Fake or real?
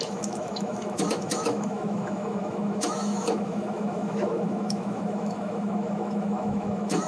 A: fake